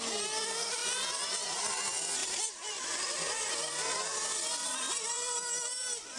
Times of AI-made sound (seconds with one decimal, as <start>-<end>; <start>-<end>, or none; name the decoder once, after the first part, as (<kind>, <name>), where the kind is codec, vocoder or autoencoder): 2.2-6.2 (vocoder, BigVGAN v2)